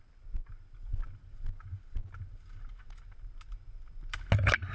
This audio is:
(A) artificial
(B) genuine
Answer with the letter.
B